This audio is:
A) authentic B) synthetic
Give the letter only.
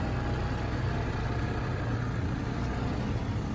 A